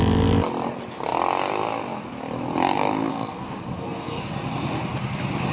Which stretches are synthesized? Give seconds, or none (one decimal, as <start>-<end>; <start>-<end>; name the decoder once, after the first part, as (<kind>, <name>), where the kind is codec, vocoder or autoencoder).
3.1-4.2 (codec, SNAC)